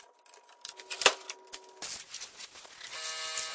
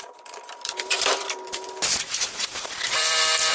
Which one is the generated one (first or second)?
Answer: second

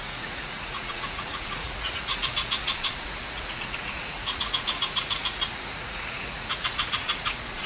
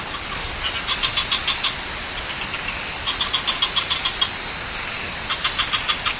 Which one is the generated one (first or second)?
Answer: first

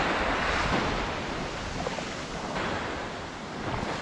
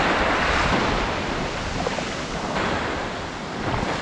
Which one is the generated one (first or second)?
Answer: second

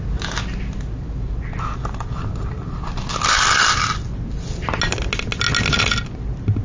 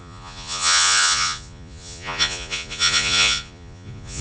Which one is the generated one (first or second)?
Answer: second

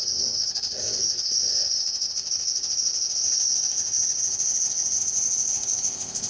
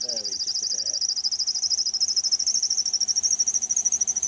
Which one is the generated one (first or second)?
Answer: first